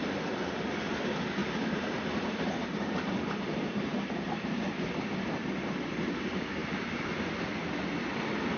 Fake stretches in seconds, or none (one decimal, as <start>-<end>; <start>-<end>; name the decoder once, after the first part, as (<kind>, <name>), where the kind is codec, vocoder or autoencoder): 1.4-4.9 (vocoder, BigVGAN v2); 6.6-7.1